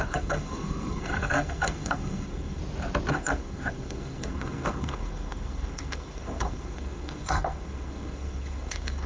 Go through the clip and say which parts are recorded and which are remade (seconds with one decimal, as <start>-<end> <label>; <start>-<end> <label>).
0.0-2.6 remade; 2.6-3.1 recorded; 3.1-9.1 remade